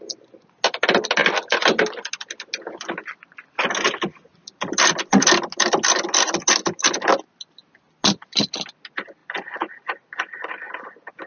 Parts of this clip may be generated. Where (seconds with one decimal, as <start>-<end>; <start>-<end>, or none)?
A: none